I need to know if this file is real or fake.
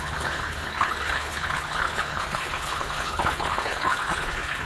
fake